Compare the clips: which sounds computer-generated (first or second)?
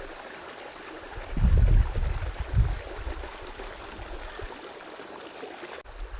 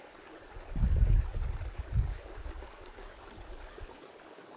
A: second